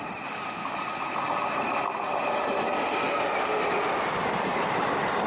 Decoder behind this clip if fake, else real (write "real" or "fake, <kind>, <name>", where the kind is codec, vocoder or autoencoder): real